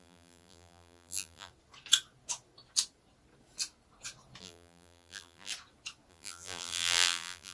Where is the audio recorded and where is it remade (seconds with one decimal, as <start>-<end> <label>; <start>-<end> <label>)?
0.0-1.5 remade; 1.5-4.4 recorded; 4.4-5.5 remade; 5.5-6.1 recorded; 6.1-7.5 remade